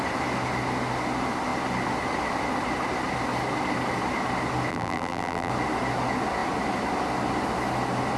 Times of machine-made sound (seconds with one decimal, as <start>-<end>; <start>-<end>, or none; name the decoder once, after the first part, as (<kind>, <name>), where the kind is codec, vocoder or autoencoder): 4.7-5.5 (vocoder, BigVGAN v2)